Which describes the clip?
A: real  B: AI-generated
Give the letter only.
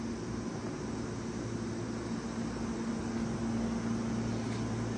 A